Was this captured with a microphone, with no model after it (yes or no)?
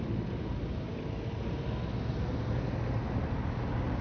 yes